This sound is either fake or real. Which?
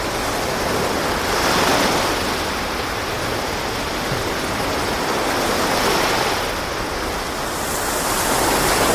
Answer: real